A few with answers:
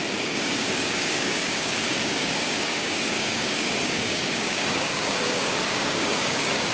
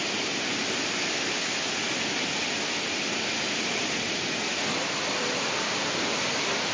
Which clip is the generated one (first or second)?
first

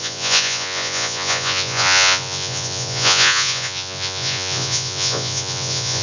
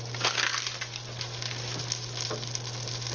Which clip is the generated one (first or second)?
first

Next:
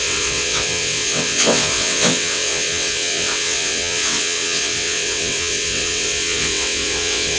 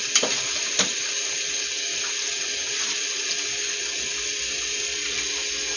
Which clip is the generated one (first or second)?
first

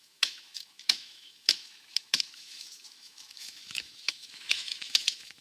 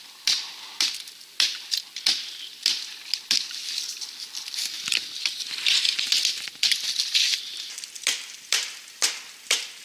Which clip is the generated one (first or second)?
first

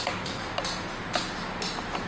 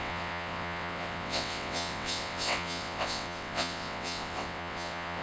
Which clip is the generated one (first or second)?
second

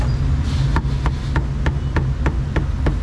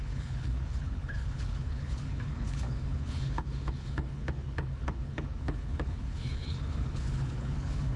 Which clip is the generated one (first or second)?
second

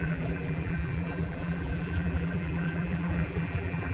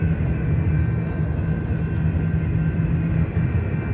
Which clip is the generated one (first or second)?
first